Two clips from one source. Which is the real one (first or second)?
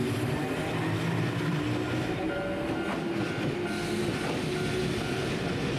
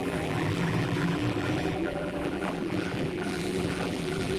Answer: first